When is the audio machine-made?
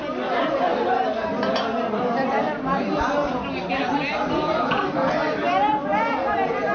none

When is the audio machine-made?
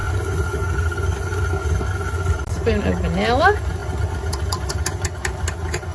none